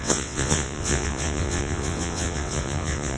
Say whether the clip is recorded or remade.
remade